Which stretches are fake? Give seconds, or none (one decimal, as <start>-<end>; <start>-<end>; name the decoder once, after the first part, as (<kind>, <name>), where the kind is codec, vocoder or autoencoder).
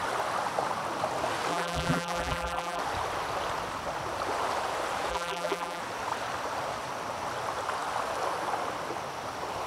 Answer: 1.5-2.8 (vocoder, BigVGAN v2); 5.1-5.8